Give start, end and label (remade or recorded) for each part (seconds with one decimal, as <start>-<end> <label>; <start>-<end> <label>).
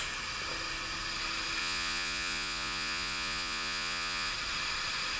0.0-1.6 recorded; 1.6-4.3 remade; 4.3-5.2 recorded